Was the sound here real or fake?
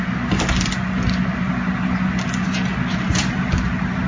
real